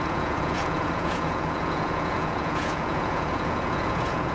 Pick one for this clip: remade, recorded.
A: remade